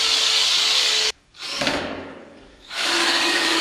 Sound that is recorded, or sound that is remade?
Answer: remade